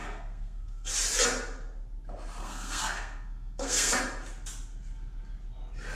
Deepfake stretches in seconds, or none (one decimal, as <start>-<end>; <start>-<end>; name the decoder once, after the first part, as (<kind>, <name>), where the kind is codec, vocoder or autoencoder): 0.0-0.9 (codec, SNAC); 2.4-3.9